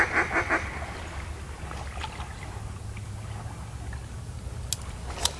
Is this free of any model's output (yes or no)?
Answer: yes